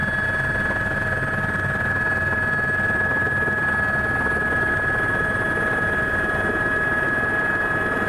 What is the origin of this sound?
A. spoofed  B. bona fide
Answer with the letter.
B